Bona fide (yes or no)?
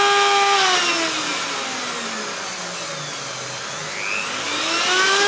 yes